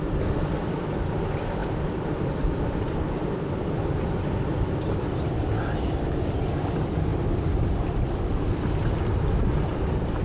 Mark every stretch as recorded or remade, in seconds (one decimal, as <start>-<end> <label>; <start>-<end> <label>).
0.0-1.6 recorded; 1.6-5.3 remade; 5.3-7.1 recorded; 7.1-8.1 remade; 8.1-10.2 recorded